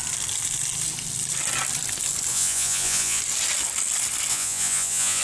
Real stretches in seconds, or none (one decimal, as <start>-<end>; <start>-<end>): 0.0-2.3; 3.2-4.3